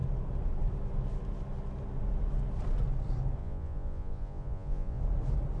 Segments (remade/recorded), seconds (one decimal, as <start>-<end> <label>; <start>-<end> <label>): 0.0-3.4 recorded; 3.4-5.0 remade; 5.0-5.6 recorded